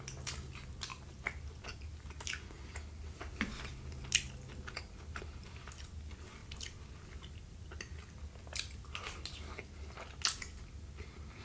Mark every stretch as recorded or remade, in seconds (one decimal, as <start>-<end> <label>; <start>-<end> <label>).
0.0-11.4 recorded